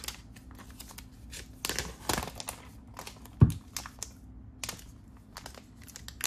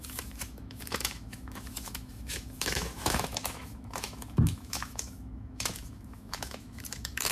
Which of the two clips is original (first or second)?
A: first